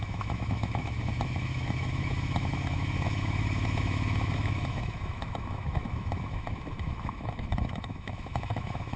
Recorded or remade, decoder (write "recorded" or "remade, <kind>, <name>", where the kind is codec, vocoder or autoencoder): remade, autoencoder, DAC-VAE